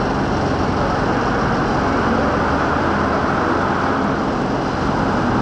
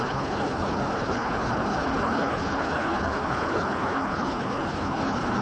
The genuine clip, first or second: first